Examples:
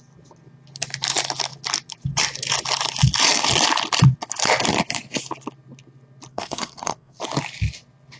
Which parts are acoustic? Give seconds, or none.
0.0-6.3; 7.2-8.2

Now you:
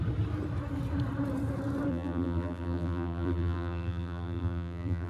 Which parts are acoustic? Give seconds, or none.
0.0-1.9

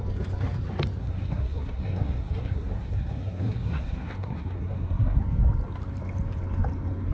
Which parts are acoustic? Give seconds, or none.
0.0-1.0; 5.2-7.1

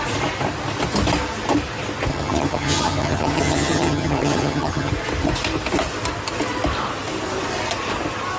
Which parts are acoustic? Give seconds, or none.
0.0-2.1; 4.9-8.4

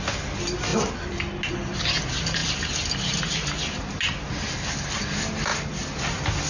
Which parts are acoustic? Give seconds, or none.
0.0-6.5

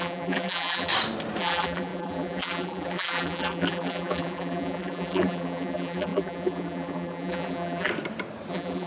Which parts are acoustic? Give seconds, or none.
0.9-1.4; 7.9-8.5